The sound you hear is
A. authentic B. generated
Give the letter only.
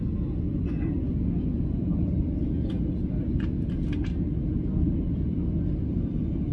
A